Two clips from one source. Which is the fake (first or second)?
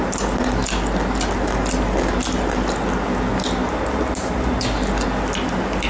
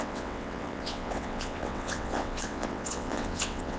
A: second